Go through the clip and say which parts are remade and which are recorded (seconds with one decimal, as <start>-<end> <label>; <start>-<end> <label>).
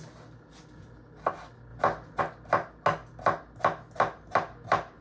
0.0-5.0 recorded